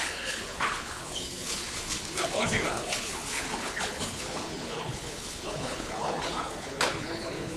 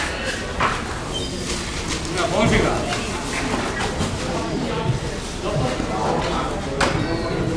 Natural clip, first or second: second